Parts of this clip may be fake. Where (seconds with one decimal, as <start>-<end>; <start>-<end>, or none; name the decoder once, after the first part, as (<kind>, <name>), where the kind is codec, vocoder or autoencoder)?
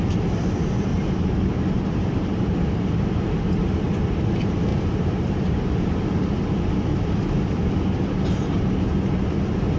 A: 0.9-2.9 (vocoder, BigVGAN v2); 4.7-6.4; 6.9-7.6